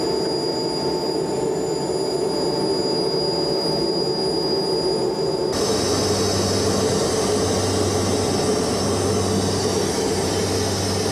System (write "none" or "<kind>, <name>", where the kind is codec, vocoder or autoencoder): none